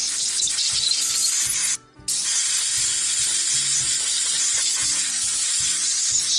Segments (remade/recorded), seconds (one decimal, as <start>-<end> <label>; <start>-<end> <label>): 0.0-6.4 recorded